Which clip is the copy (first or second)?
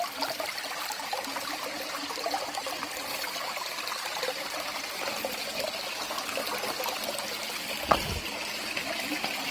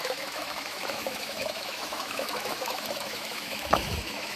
second